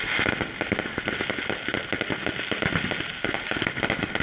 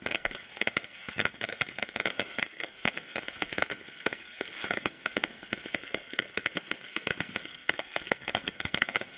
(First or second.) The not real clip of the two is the second